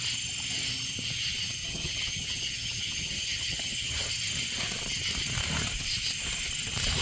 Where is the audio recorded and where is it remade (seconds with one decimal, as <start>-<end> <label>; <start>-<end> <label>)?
0.0-1.6 recorded; 1.6-4.1 remade; 4.1-7.0 recorded